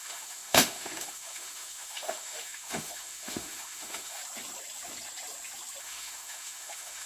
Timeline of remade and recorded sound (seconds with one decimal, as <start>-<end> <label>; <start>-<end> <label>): 0.0-4.2 remade; 4.2-5.8 recorded; 5.8-7.1 remade

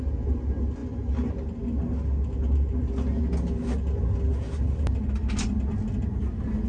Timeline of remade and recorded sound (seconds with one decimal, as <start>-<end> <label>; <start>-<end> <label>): 0.0-6.7 recorded

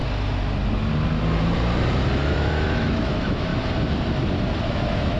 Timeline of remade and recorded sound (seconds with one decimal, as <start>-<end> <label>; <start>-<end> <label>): 0.0-2.3 recorded; 2.3-3.5 remade; 3.5-4.7 recorded; 4.7-5.2 remade